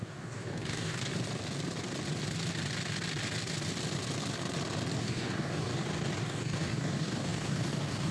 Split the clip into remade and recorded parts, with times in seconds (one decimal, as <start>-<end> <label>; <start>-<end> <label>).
0.0-1.1 remade; 1.1-5.0 recorded; 5.0-5.7 remade; 5.7-6.2 recorded; 6.2-8.1 remade